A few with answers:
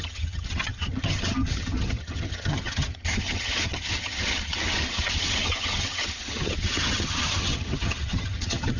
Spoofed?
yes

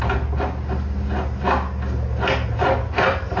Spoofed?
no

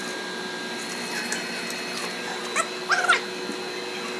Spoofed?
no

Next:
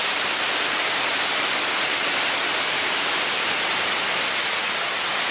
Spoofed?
no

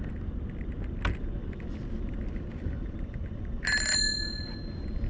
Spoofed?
no